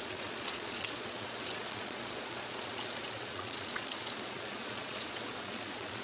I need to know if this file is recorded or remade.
remade